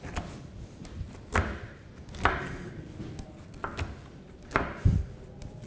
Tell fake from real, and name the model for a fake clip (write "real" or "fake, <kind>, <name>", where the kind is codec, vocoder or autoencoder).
real